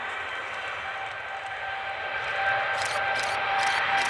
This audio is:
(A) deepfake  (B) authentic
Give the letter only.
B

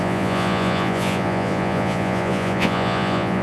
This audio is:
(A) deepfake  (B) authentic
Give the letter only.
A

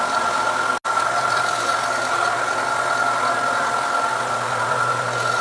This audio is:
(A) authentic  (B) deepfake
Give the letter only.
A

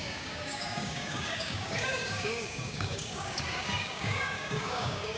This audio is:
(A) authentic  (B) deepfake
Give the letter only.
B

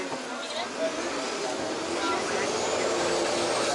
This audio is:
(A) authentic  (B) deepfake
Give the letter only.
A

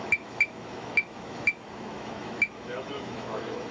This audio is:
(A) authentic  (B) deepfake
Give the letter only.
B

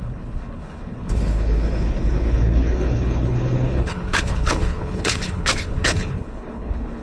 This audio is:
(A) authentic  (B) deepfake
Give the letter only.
B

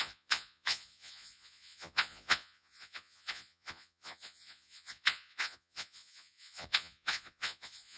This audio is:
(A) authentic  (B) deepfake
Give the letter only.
B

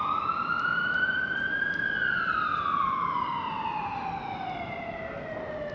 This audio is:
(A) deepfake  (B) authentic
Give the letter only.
B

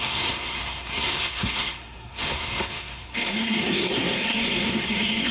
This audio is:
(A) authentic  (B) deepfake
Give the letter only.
B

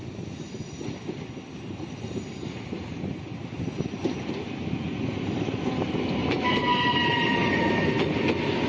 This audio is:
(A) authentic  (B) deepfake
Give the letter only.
A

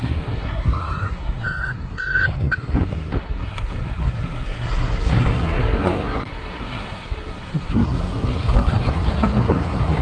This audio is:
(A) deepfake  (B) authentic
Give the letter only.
A